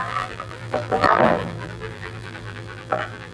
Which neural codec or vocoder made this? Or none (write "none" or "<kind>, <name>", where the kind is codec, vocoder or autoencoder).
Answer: vocoder, BigVGAN v2